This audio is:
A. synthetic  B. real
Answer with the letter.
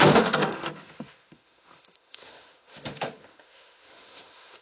A